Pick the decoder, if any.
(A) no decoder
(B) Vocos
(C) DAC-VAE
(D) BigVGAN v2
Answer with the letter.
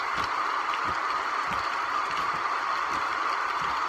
A